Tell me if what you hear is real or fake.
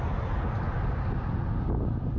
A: real